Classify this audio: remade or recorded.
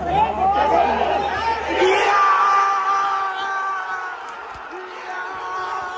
recorded